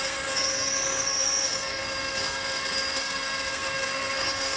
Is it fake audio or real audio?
fake